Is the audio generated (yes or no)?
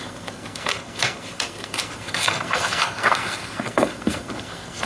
yes